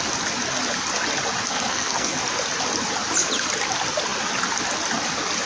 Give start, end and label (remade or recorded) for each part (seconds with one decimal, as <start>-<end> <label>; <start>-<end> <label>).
0.0-1.5 recorded; 1.5-2.1 remade; 2.1-5.5 recorded